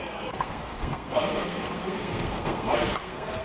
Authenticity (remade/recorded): remade